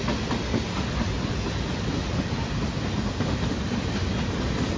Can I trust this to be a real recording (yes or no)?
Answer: yes